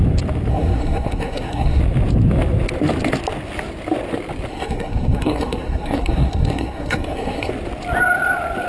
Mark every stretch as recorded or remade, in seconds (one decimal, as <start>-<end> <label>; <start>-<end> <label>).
0.0-0.5 recorded; 0.5-1.8 remade; 1.8-4.5 recorded; 4.5-7.5 remade; 7.5-8.7 recorded